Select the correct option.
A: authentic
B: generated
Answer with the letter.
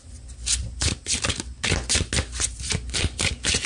A